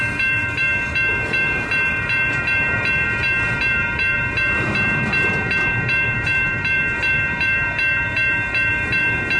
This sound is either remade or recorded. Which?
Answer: remade